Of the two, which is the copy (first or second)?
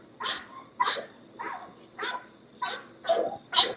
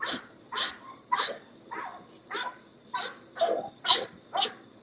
second